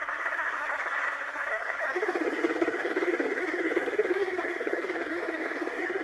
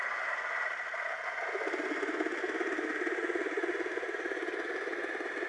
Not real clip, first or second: first